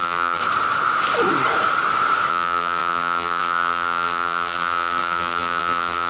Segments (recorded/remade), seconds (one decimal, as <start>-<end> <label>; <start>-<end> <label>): 0.0-0.4 remade; 0.4-2.3 recorded; 2.3-6.1 remade